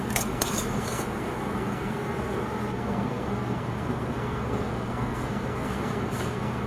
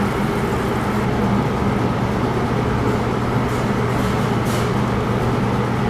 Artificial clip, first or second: first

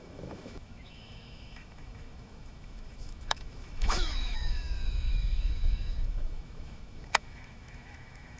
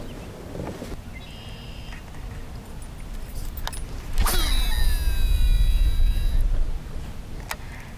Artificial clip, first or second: first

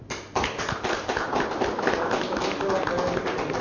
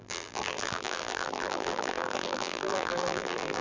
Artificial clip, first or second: second